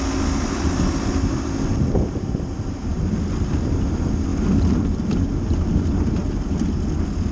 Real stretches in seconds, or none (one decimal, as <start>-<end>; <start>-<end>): 0.0-7.3